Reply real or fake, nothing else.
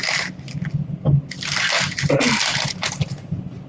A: real